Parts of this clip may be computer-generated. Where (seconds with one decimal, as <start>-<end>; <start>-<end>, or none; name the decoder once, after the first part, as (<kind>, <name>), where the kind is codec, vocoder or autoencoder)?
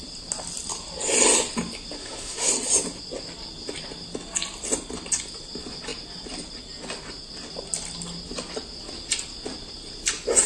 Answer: 2.0-2.5 (autoencoder, DAC-VAE)